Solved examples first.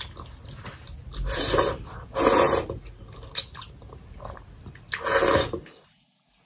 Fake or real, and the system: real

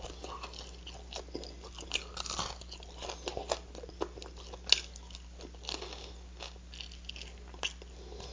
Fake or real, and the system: real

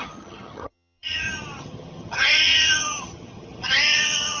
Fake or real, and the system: fake, vocoder, HiFi-GAN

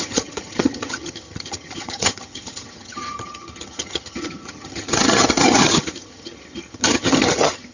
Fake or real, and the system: fake, vocoder, HiFi-GAN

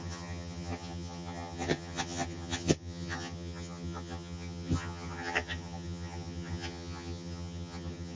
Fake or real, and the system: fake, vocoder, HiFi-GAN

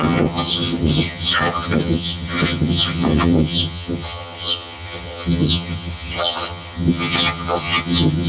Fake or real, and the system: fake, vocoder, HiFi-GAN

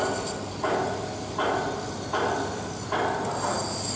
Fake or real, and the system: real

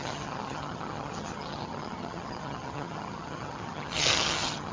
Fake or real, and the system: fake, vocoder, HiFi-GAN